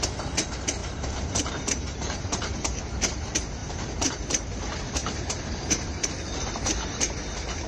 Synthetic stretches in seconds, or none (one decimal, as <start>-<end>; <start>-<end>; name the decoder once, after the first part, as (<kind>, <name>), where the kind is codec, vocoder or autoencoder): 0.8-2.8 (vocoder, BigVGAN v2); 3.6-4.2; 5.0-6.1